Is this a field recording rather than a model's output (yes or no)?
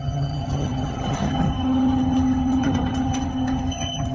no